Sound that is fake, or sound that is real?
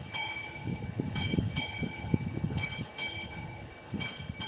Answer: fake